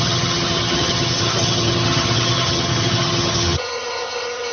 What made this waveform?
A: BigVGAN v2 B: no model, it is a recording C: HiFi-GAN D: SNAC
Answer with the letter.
C